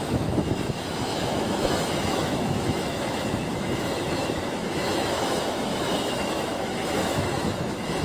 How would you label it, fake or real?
fake